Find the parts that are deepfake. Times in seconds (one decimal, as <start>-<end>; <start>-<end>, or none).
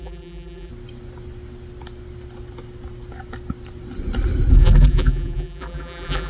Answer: 0.0-0.7; 4.5-6.3